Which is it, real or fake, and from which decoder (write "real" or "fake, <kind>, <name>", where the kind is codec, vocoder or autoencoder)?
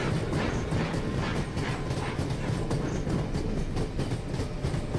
real